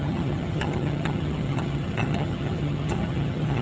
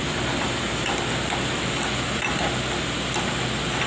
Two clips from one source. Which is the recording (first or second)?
second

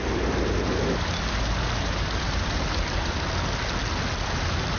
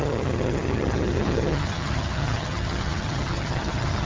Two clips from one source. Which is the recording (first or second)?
first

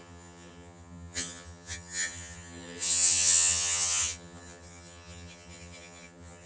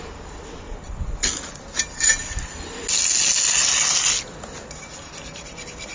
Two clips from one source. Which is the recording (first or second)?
second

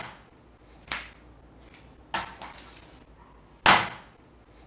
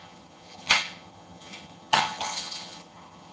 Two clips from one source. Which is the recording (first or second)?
first